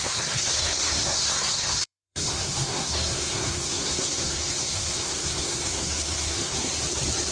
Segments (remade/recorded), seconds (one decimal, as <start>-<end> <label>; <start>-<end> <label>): 0.0-6.7 remade; 6.7-7.3 recorded